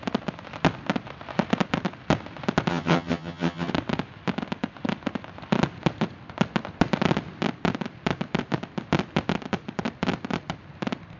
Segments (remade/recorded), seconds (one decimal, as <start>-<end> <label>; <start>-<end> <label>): 0.0-2.7 recorded; 2.7-3.7 remade; 3.7-11.2 recorded

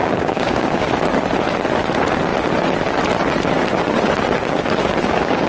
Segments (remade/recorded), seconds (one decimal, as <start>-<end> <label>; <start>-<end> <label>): 0.0-0.9 remade; 0.9-4.8 recorded; 4.8-5.5 remade

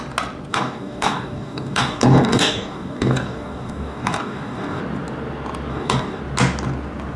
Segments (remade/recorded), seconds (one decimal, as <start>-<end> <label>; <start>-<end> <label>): 0.0-0.5 recorded; 0.5-4.8 remade; 4.8-5.7 recorded; 5.7-6.2 remade; 6.2-7.2 recorded

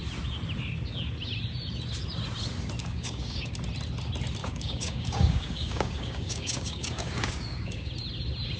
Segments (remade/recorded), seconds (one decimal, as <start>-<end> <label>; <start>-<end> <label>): 0.0-2.8 recorded; 2.8-3.5 remade; 3.5-4.4 recorded; 4.4-7.9 remade; 7.9-8.6 recorded

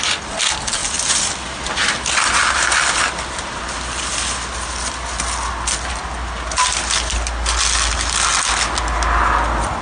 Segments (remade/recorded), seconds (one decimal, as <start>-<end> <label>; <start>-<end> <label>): 0.0-9.8 recorded

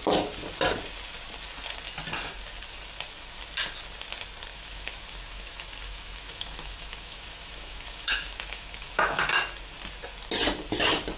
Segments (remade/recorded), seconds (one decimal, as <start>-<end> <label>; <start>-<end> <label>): 0.0-4.5 recorded; 4.5-9.2 remade; 9.2-11.2 recorded

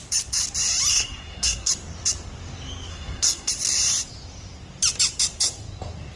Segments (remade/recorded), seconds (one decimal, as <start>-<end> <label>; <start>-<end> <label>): 0.0-0.9 recorded; 0.9-1.7 remade; 1.7-2.9 recorded; 2.9-3.5 remade; 3.5-6.2 recorded

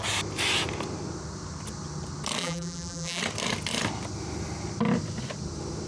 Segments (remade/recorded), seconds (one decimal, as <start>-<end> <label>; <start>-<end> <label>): 0.0-2.4 recorded; 2.4-3.2 remade; 3.2-5.9 recorded